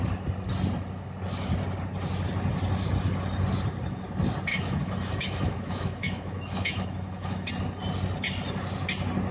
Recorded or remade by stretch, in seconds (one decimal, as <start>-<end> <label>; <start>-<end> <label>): 0.0-4.5 recorded; 4.5-7.5 remade; 7.5-9.3 recorded